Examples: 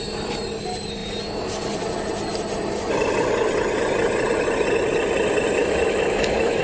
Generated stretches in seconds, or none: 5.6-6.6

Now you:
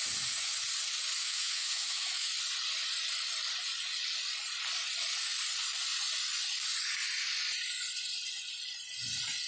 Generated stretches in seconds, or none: 1.2-2.3

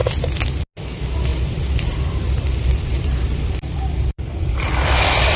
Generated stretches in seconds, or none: 1.3-4.5

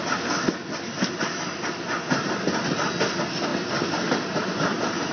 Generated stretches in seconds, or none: none